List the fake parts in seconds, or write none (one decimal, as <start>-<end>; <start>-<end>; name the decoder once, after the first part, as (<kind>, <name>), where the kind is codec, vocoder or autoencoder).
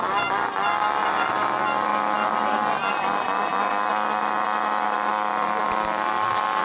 1.0-1.5 (vocoder, BigVGAN v2)